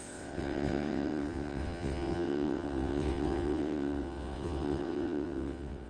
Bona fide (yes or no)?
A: no